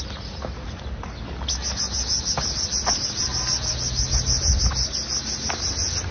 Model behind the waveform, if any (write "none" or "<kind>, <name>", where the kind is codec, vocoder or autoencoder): none